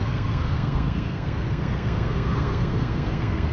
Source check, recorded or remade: remade